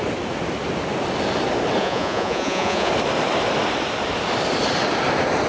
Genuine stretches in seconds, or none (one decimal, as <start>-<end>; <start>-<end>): 0.0-1.8; 2.9-5.5